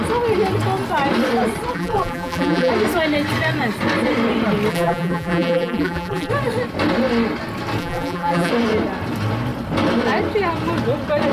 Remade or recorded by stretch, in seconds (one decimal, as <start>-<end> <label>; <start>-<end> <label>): 0.0-1.7 recorded; 1.7-2.7 remade; 2.7-4.7 recorded; 4.7-6.3 remade; 6.3-7.8 recorded; 7.8-8.5 remade; 8.5-11.3 recorded